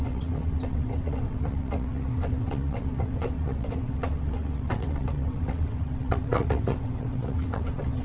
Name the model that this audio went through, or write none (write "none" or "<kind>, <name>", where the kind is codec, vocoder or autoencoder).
vocoder, WaveNeXt